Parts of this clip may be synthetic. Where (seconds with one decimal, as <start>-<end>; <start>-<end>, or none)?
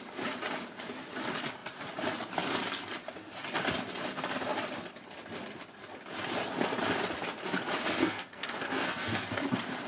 8.0-9.4